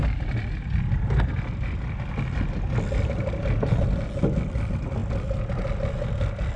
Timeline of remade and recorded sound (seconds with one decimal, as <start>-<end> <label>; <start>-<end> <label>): 0.0-6.6 recorded